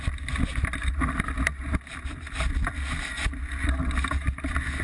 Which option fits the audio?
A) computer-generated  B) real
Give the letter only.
B